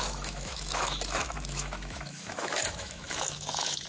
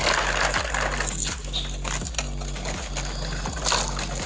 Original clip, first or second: second